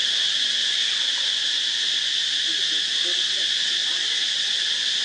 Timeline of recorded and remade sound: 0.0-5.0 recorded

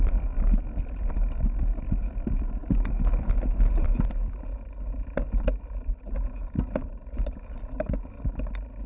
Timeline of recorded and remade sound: 0.0-8.9 recorded

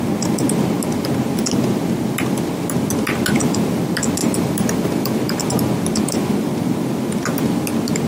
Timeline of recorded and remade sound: 0.0-4.2 recorded; 4.2-5.5 remade; 5.5-8.1 recorded

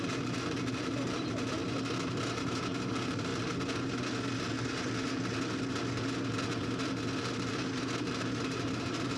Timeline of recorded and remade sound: 0.0-1.6 remade; 1.6-2.1 recorded; 2.1-3.3 remade; 3.3-8.1 recorded; 8.1-9.2 remade

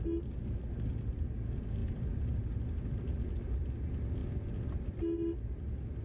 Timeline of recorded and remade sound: 0.0-1.8 recorded; 1.8-2.5 remade; 2.5-6.0 recorded